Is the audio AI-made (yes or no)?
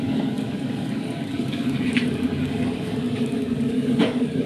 yes